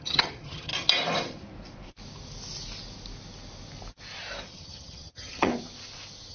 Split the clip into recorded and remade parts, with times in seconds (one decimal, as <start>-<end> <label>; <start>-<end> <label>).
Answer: 0.0-0.7 remade; 0.7-4.5 recorded; 4.5-5.5 remade; 5.5-6.3 recorded